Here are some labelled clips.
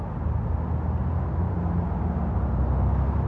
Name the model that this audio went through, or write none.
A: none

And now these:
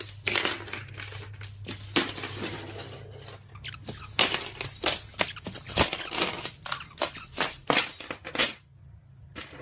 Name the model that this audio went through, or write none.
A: none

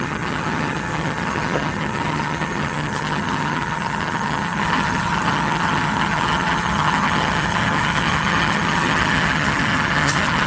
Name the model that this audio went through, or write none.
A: vocoder, HiFi-GAN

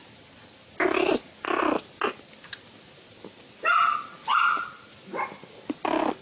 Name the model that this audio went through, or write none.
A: none